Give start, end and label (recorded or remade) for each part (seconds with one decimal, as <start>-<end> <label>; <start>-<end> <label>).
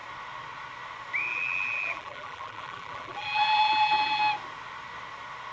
0.0-1.3 recorded; 1.3-4.2 remade; 4.2-5.5 recorded